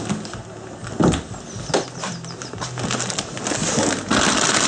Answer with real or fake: real